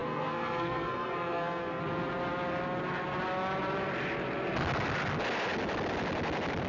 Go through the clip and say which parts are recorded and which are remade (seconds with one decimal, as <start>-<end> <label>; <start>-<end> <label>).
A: 0.0-1.8 remade; 1.8-6.7 recorded